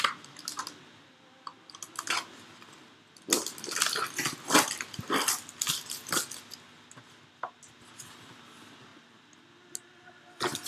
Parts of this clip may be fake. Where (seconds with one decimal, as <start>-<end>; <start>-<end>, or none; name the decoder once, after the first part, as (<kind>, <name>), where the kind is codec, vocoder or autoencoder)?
none